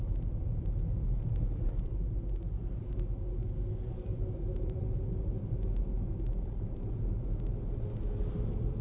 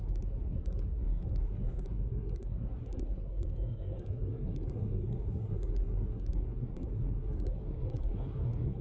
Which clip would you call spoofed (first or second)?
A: second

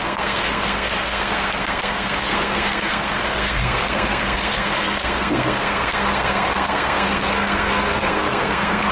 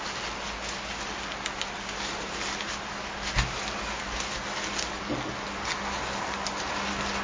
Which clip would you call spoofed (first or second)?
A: first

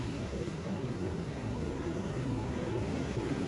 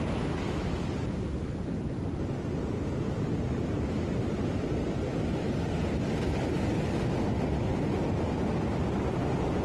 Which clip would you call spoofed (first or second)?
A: first